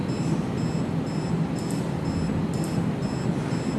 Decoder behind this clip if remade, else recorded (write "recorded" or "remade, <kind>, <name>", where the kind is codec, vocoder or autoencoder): recorded